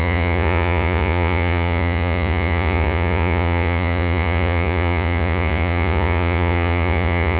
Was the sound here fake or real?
fake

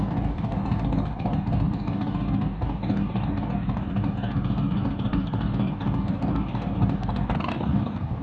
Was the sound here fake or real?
fake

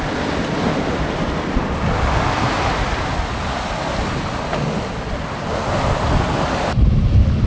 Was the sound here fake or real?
real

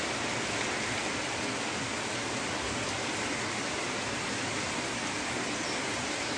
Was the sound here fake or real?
real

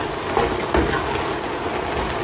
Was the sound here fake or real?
real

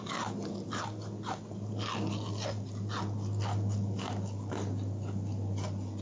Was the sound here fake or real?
real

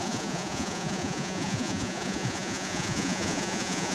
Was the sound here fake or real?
fake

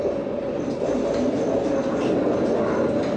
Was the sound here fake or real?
real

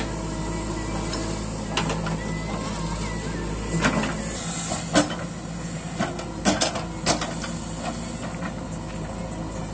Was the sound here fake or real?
real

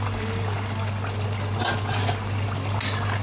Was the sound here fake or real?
real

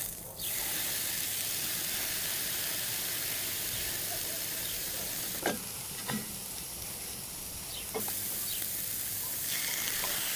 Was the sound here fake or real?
fake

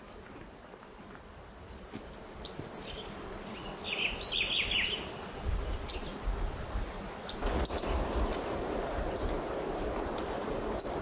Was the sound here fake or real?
real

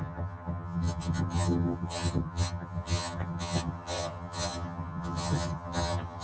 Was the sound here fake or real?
fake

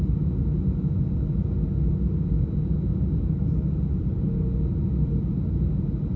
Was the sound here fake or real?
real